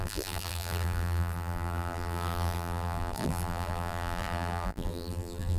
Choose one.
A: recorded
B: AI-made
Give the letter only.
B